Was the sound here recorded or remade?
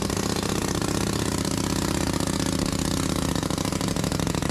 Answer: recorded